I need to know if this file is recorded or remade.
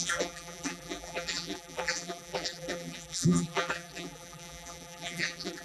remade